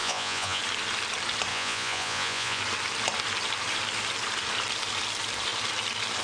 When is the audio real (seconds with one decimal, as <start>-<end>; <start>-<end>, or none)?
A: 0.6-1.5; 2.6-6.2